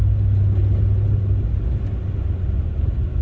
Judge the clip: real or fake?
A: real